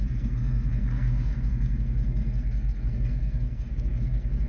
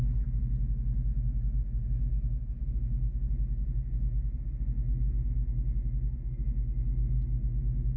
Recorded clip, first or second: second